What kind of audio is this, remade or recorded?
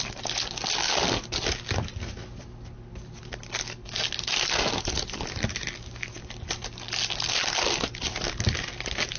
recorded